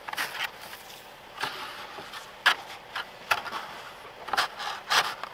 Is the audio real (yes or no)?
yes